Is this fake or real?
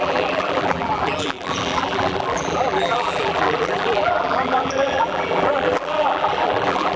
fake